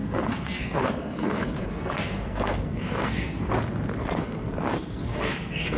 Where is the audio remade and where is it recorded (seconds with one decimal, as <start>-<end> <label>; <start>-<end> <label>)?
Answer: 0.0-3.5 remade; 3.5-4.0 recorded; 4.0-5.8 remade